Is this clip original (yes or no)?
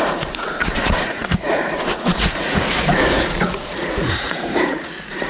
no